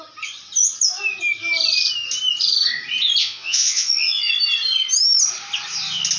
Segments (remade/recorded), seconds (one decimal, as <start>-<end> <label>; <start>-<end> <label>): 0.0-3.2 recorded; 3.2-4.3 remade; 4.3-6.2 recorded